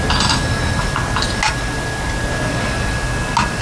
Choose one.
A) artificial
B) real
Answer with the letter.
B